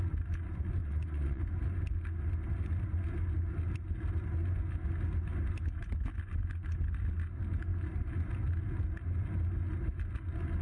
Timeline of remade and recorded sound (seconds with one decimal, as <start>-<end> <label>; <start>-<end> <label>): 0.0-0.8 recorded; 0.8-1.4 remade; 1.4-10.6 recorded